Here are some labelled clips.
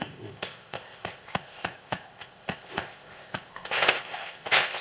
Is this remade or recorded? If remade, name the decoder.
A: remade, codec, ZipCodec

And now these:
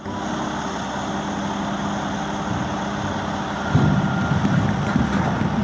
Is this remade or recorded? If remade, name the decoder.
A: recorded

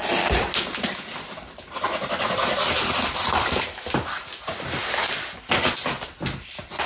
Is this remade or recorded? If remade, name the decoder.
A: remade, vocoder, BigVGAN v2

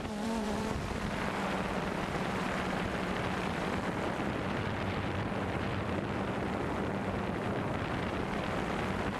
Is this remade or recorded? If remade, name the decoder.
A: remade, vocoder, BigVGAN v2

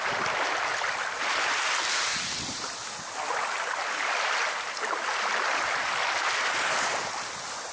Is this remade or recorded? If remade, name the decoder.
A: recorded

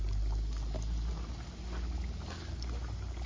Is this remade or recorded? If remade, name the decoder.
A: recorded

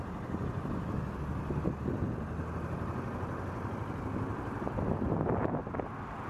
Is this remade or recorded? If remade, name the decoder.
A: recorded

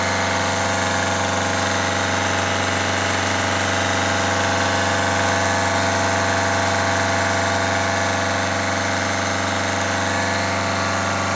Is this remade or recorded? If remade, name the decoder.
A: recorded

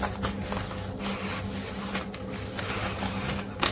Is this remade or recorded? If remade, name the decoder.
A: recorded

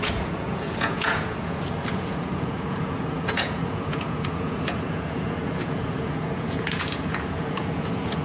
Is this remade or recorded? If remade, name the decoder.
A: remade, vocoder, Vocos